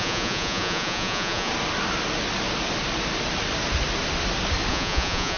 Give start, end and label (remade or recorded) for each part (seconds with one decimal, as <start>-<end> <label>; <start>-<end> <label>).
0.0-1.5 remade; 1.5-4.7 recorded; 4.7-5.4 remade